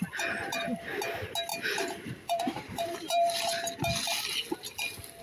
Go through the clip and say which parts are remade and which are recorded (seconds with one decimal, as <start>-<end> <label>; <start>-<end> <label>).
0.0-1.5 recorded; 1.5-3.3 remade; 3.3-5.2 recorded